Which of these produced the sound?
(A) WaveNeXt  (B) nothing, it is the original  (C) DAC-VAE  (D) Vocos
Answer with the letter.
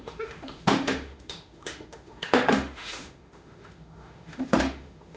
C